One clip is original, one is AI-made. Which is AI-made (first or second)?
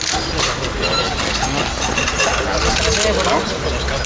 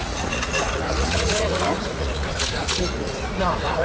second